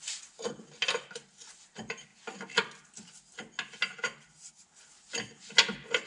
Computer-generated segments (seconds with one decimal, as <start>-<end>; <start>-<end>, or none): none